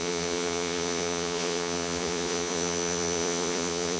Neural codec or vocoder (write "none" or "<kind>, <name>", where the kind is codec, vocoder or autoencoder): vocoder, Vocos